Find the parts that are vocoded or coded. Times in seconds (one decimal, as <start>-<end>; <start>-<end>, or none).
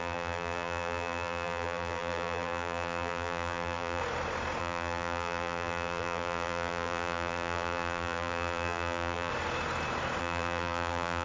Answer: 0.0-4.0; 4.6-9.3; 10.2-11.2